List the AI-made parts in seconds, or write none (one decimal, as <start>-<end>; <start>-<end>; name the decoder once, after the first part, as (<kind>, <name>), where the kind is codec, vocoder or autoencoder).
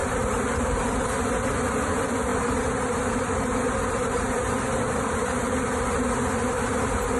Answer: 0.0-1.2 (vocoder, BigVGAN v2); 2.3-5.5